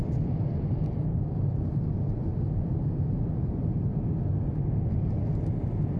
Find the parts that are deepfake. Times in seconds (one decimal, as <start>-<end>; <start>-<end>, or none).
none